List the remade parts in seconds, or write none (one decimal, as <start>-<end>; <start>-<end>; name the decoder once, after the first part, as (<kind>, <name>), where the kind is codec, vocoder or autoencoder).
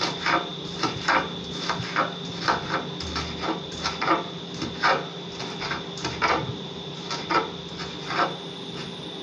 none